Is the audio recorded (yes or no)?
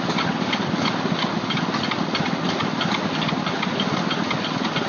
yes